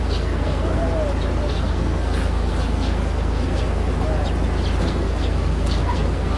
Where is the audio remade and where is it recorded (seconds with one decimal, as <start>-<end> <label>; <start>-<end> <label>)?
0.0-0.8 remade; 0.8-1.5 recorded; 1.5-3.9 remade; 3.9-4.8 recorded; 4.8-6.4 remade